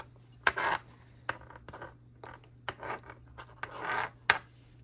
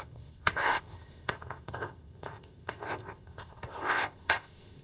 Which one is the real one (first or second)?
first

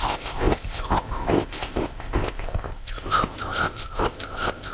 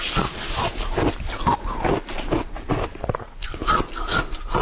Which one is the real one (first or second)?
second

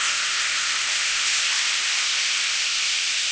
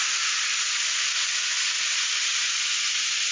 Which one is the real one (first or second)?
second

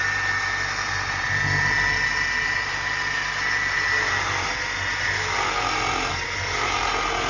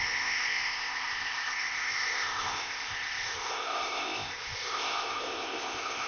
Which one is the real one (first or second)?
first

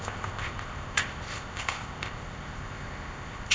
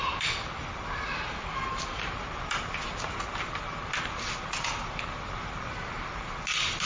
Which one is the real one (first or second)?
second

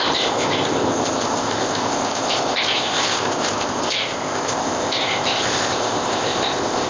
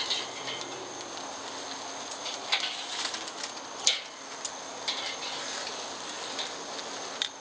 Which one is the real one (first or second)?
second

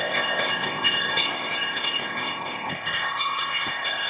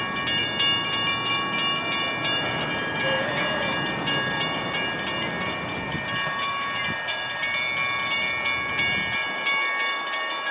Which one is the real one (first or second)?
second